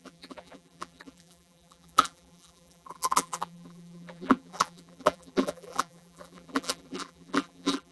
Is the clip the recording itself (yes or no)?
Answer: no